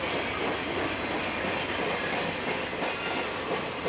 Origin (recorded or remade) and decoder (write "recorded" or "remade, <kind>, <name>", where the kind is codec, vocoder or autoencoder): recorded